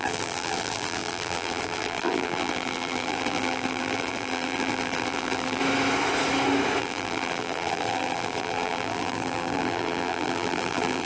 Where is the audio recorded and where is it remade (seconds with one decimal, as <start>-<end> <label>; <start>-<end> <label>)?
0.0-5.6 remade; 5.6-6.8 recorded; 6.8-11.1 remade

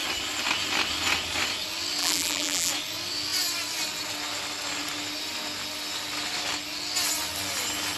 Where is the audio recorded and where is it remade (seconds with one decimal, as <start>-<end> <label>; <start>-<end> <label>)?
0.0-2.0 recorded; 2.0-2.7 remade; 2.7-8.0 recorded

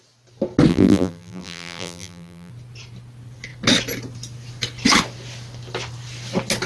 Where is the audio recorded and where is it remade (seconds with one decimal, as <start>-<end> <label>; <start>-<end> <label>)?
0.0-0.7 recorded; 0.7-2.5 remade; 2.5-6.7 recorded

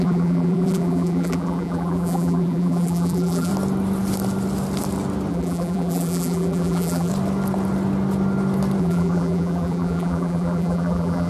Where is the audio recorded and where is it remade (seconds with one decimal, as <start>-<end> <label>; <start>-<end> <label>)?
0.0-3.5 remade; 3.5-5.3 recorded; 5.3-7.1 remade; 7.1-8.8 recorded; 8.8-11.3 remade

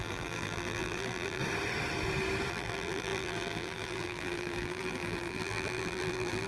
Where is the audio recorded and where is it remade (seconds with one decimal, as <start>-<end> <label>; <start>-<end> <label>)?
0.0-1.4 remade; 1.4-2.5 recorded; 2.5-6.5 remade